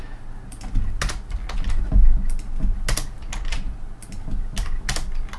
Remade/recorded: recorded